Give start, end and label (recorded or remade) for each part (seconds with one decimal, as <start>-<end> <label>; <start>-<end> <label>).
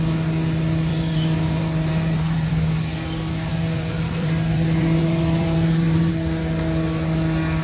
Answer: 0.0-0.9 recorded; 0.9-2.5 remade; 2.5-3.5 recorded; 3.5-6.1 remade; 6.1-7.6 recorded